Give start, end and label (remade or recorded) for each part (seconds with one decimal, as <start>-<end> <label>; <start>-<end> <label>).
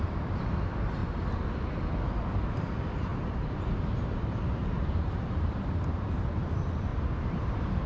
0.0-3.1 recorded; 3.1-5.6 remade; 5.6-7.9 recorded